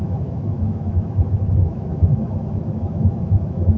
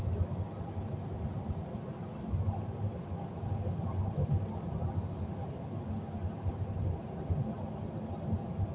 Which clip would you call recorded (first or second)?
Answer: second